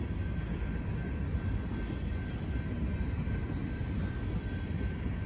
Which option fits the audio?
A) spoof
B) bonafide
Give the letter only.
B